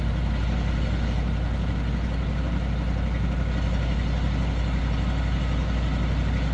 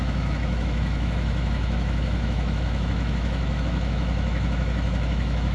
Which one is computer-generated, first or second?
second